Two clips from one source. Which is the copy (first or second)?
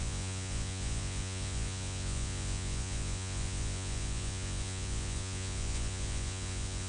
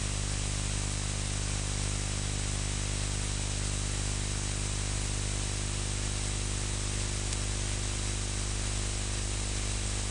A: first